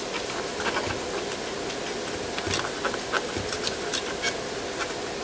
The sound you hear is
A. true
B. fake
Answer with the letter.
A